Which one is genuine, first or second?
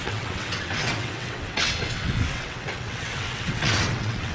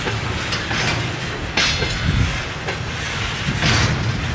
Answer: second